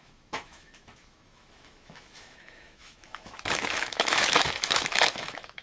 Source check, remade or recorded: remade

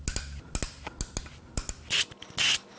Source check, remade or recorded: recorded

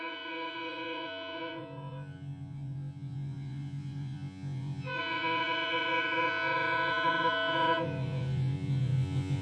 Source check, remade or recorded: remade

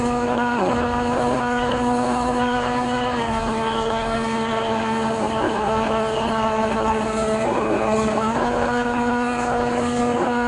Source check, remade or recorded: remade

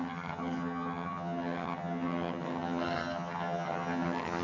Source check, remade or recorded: remade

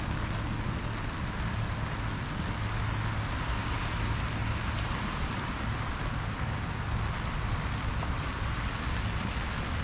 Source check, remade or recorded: recorded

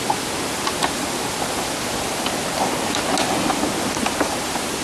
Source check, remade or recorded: recorded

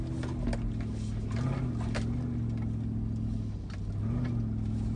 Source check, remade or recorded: recorded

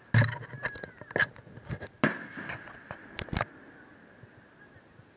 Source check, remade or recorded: recorded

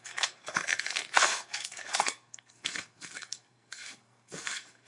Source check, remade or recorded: remade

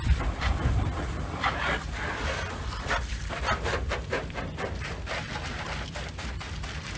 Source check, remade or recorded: remade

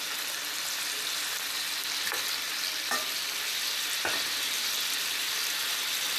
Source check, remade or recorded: recorded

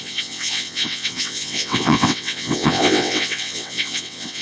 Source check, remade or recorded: remade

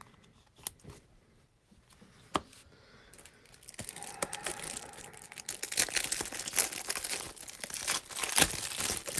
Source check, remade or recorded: recorded